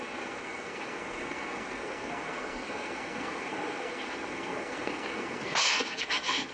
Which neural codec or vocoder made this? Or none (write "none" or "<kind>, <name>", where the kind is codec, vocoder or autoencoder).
codec, SNAC